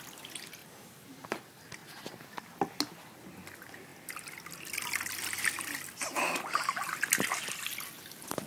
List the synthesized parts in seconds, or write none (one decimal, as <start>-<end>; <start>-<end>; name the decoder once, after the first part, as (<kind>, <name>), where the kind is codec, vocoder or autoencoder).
0.6-1.4 (vocoder, BigVGAN v2)